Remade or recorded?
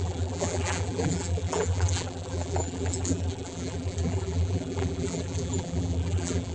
remade